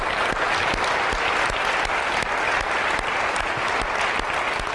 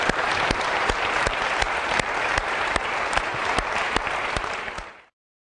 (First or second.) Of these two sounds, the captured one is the first